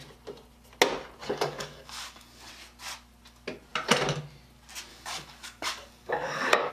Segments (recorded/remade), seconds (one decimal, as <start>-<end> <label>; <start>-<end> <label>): 0.0-1.2 recorded; 1.2-2.5 remade; 2.5-4.9 recorded; 4.9-6.7 remade